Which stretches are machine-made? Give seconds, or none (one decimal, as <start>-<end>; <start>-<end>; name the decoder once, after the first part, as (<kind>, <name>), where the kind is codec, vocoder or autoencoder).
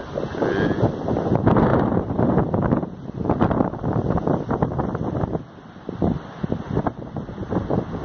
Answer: 1.7-2.4 (vocoder, BigVGAN v2)